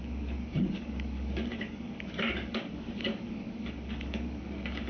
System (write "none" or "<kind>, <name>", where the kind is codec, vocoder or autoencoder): codec, DAC